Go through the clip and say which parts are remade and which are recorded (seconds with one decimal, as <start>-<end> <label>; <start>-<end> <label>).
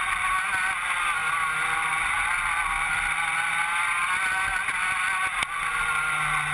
0.0-6.5 recorded